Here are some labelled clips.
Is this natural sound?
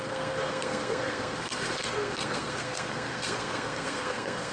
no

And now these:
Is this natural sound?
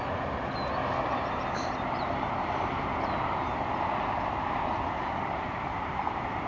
yes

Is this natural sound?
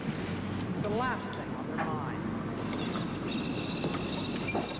yes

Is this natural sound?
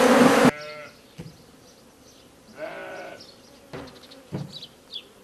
yes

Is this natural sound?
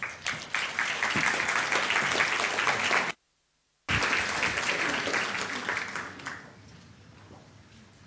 yes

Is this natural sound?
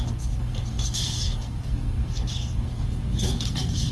no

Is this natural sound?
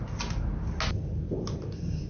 yes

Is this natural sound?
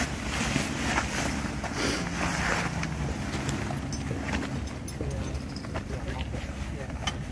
yes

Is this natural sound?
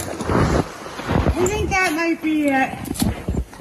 yes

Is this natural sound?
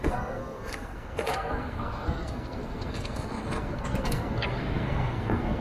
no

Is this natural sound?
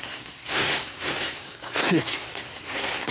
no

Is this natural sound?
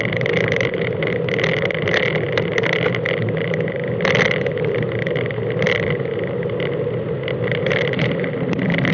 yes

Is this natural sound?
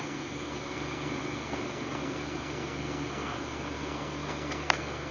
no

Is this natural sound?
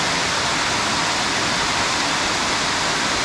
yes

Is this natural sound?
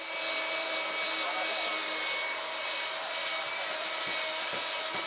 yes